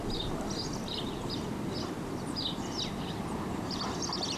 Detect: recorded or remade recorded